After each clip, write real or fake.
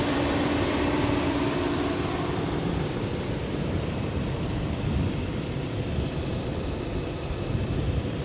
fake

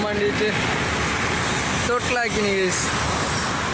real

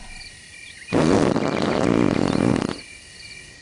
real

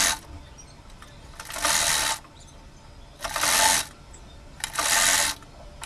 real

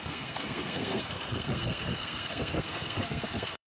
fake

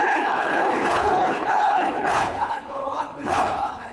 fake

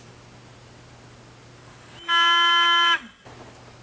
real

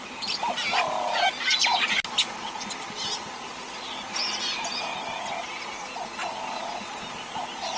real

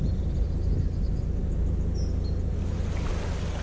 real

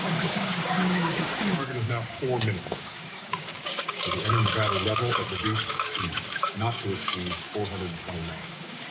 fake